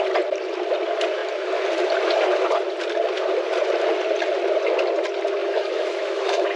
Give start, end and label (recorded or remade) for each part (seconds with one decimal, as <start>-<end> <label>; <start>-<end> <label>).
0.0-5.4 recorded; 5.4-6.6 remade